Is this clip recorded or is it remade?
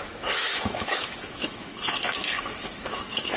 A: remade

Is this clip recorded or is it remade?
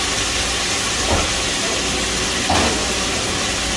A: recorded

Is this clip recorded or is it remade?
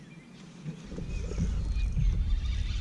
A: recorded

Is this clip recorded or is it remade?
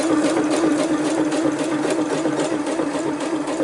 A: recorded